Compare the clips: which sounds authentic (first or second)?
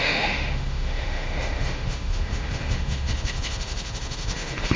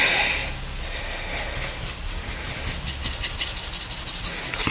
second